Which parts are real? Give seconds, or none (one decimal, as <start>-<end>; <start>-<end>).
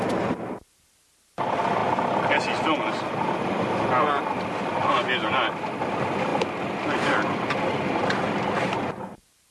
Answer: 0.0-9.5